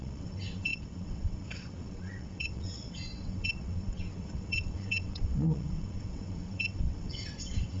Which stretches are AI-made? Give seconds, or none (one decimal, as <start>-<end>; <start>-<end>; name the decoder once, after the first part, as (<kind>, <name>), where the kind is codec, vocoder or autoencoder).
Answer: 0.0-7.8 (vocoder, WaveNeXt)